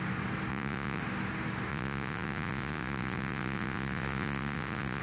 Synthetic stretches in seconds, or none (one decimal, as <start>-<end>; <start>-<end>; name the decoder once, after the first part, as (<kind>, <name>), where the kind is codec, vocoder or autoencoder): 0.5-1.0 (vocoder, Vocos); 1.7-5.0